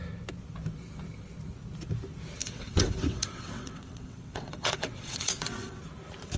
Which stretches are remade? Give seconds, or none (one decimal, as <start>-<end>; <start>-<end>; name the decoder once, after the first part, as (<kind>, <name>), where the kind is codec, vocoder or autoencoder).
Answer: 2.4-5.8 (vocoder, WaveNeXt)